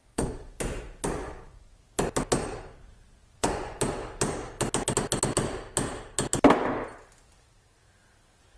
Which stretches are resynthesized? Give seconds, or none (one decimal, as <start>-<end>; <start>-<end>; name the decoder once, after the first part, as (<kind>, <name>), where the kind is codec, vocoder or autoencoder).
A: 0.0-0.6 (vocoder, Vocos); 1.2-1.7; 3.2-3.8